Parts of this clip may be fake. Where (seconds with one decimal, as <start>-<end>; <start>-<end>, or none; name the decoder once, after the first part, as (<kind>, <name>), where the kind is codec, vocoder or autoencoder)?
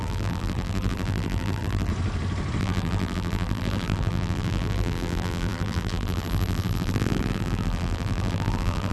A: 0.0-1.9 (vocoder, BigVGAN v2); 2.6-8.9